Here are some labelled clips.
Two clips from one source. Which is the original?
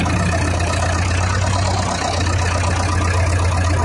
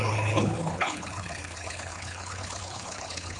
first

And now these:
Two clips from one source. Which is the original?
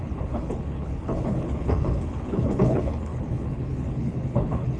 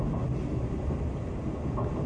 second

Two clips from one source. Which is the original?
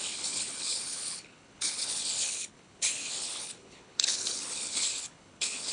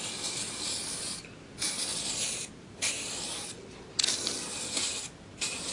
second